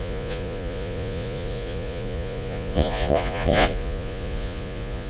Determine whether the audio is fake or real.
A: fake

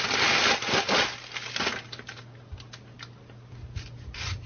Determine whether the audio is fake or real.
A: real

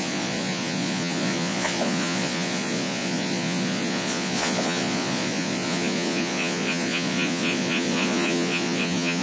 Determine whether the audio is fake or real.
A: fake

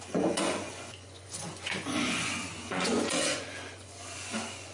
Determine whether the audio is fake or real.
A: fake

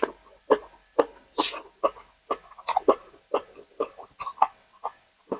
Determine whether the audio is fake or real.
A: real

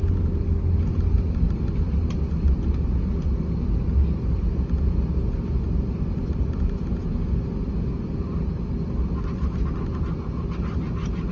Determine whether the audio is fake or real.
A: real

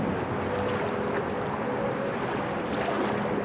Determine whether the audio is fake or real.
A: real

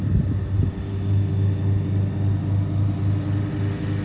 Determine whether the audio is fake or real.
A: real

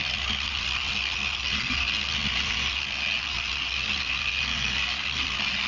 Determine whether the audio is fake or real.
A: real